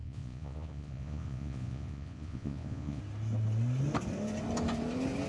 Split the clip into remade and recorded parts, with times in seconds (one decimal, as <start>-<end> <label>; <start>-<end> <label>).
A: 0.0-3.0 remade; 3.0-5.3 recorded